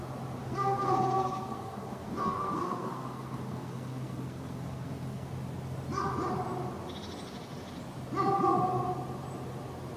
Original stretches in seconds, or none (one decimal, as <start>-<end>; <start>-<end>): 0.0-0.4; 5.3-10.0